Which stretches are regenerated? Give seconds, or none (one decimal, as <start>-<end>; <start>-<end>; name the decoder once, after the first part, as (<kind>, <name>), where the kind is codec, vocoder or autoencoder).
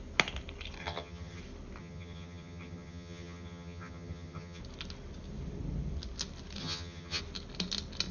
0.8-1.4 (vocoder, HiFi-GAN); 1.8-4.6; 6.6-7.2